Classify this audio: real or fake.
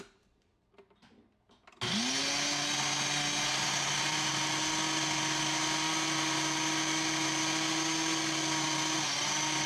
real